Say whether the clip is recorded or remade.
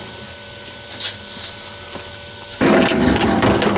recorded